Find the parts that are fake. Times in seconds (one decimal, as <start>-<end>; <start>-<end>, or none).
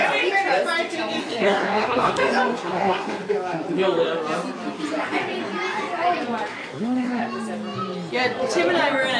1.2-2.1; 2.5-3.2; 6.5-7.2